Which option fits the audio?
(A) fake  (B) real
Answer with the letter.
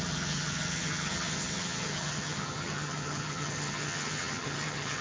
A